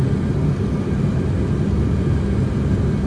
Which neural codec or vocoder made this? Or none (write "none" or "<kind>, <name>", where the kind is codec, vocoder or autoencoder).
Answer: none